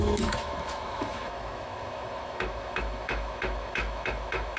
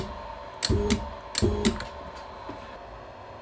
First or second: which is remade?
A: first